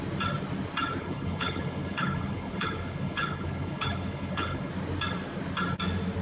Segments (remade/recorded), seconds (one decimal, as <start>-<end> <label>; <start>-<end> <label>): 0.0-1.0 recorded; 1.0-4.7 remade; 4.7-6.2 recorded